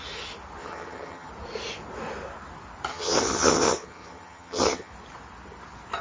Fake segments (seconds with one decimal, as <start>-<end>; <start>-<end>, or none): 0.6-1.3; 2.9-4.9